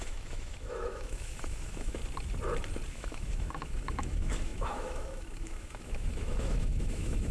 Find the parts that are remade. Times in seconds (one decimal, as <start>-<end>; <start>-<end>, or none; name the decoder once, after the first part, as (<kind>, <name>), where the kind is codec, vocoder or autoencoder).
0.0-2.0 (autoencoder, DAC-VAE); 2.9-7.3